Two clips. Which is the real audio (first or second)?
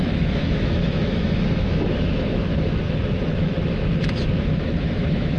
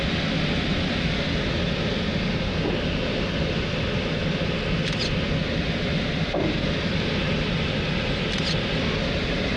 second